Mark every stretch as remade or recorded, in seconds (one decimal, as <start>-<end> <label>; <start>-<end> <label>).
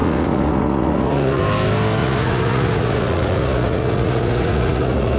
0.0-1.4 remade; 1.4-2.0 recorded; 2.0-5.2 remade